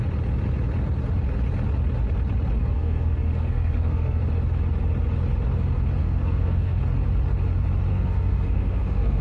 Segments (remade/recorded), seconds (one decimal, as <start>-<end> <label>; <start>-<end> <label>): 0.0-2.6 recorded; 2.6-4.2 remade; 4.2-6.0 recorded; 6.0-6.8 remade; 6.8-7.9 recorded; 7.9-9.2 remade